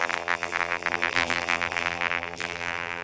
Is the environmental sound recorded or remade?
remade